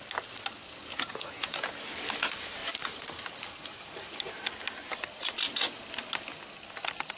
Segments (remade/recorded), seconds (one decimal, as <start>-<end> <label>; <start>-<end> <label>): 0.0-0.9 recorded; 0.9-1.7 remade; 1.7-7.2 recorded